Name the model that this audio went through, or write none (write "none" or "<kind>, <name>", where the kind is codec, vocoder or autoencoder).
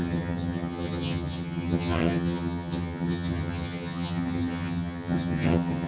vocoder, HiFi-GAN